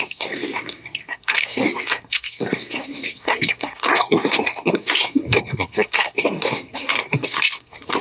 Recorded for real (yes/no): no